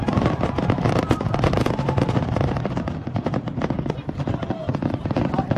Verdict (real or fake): fake